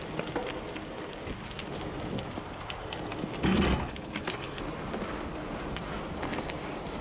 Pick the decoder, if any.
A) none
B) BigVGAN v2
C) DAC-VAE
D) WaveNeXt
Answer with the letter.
A